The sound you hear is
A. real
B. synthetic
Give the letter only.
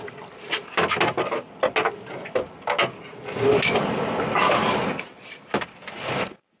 A